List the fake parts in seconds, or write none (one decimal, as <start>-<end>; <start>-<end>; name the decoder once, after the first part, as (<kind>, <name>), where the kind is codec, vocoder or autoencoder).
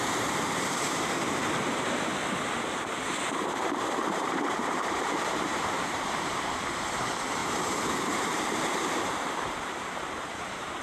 0.0-2.1 (vocoder, BigVGAN v2); 2.6-10.8